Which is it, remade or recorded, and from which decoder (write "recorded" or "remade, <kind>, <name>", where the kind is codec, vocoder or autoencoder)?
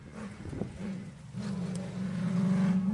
remade, vocoder, Vocos